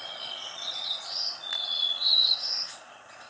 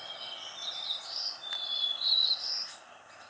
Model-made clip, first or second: first